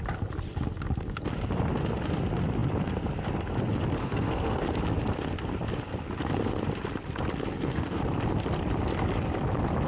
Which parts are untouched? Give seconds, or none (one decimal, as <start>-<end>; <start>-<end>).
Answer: 0.0-4.0; 4.6-7.5; 8.0-9.9